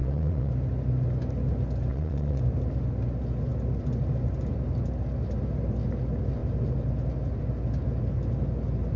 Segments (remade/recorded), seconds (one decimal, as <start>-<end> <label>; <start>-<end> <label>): 0.0-0.5 remade; 0.5-1.9 recorded; 1.9-2.4 remade; 2.4-9.0 recorded

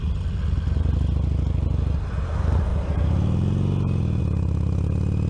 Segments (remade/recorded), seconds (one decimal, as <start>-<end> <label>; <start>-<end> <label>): 0.0-5.3 recorded

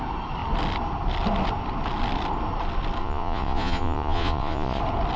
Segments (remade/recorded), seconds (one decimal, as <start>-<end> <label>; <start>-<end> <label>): 0.0-3.0 recorded; 3.0-4.8 remade; 4.8-5.2 recorded

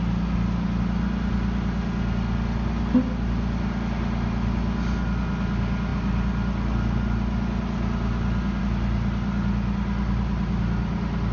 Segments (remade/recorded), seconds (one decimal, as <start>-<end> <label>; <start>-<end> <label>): 0.0-11.3 recorded

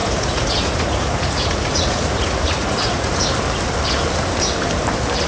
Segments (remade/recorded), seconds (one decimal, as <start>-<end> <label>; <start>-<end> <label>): 0.0-3.2 remade; 3.2-5.3 recorded